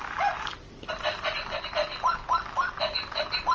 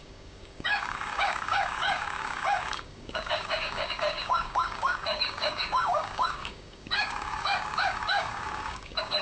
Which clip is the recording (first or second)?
first